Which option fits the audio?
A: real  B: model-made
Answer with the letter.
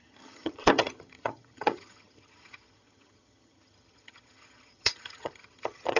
B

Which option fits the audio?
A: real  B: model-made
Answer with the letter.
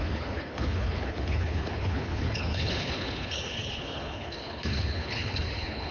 B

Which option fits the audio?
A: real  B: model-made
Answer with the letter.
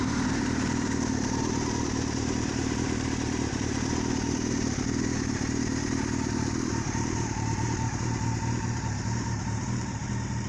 B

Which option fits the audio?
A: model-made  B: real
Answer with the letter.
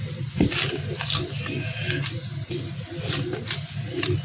B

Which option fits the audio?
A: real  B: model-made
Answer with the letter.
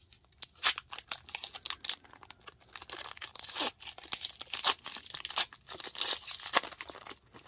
A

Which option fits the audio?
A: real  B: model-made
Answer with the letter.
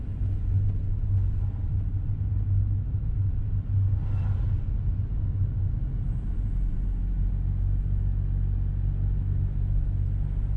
A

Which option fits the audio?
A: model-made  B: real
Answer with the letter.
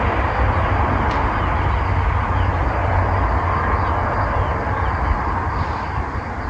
B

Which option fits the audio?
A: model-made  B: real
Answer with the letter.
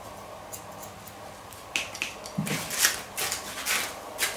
B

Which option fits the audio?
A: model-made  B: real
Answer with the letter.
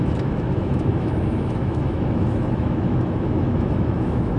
A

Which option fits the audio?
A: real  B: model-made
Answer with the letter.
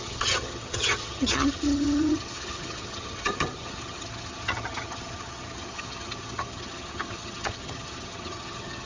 B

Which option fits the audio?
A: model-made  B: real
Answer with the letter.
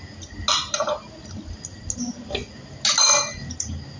B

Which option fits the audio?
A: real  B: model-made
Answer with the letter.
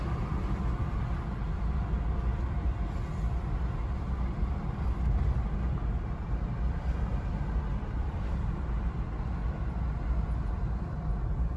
A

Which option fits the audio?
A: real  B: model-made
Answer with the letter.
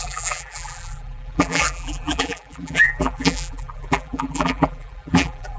B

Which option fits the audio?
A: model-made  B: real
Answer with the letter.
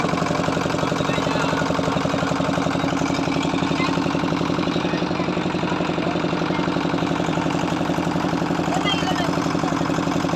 B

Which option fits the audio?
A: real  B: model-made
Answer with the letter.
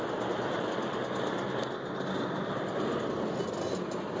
A